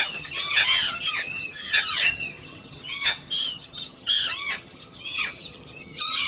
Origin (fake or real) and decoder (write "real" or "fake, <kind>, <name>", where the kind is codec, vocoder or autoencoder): fake, vocoder, HiFi-GAN